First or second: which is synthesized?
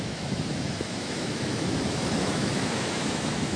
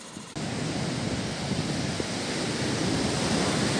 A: first